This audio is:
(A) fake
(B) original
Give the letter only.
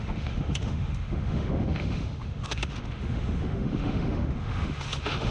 A